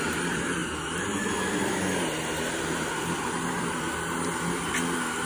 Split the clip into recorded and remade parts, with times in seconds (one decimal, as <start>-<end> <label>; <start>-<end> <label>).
0.0-5.3 recorded